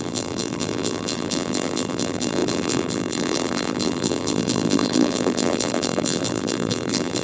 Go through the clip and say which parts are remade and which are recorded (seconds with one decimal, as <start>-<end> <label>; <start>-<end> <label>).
0.0-7.2 remade